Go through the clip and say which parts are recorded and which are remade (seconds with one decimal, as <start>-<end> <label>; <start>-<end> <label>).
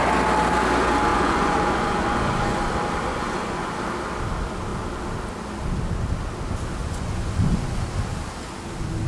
0.0-1.1 recorded; 1.1-2.7 remade; 2.7-3.1 recorded; 3.1-3.7 remade; 3.7-6.8 recorded; 6.8-7.9 remade; 7.9-9.1 recorded